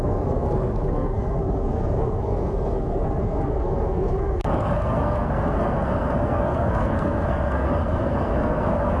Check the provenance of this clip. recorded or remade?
remade